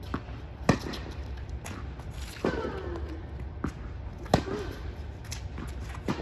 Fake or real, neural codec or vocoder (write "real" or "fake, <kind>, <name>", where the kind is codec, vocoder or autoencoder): real